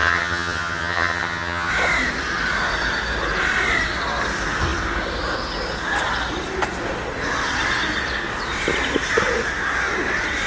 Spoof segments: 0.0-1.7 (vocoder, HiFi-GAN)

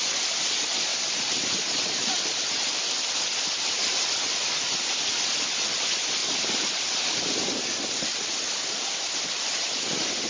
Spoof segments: none

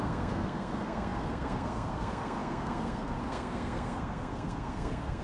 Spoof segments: 0.0-5.2 (codec, SNAC)